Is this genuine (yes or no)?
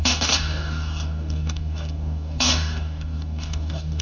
no